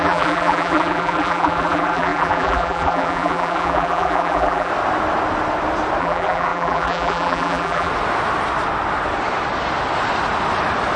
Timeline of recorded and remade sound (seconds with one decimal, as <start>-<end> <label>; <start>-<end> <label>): 0.0-4.7 remade; 4.7-6.0 recorded; 6.0-7.9 remade; 7.9-11.0 recorded